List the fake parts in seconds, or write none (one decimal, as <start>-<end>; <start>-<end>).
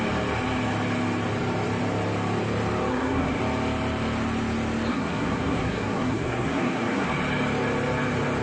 2.9-3.4; 4.9-7.1